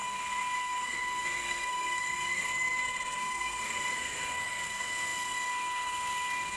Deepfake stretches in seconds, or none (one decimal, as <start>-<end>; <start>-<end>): 0.0-6.6